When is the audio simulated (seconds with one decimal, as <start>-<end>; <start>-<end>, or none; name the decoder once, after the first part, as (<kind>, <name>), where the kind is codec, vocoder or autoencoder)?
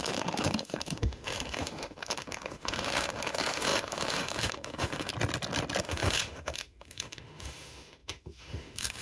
0.0-5.1 (autoencoder, DAC-VAE); 5.8-9.0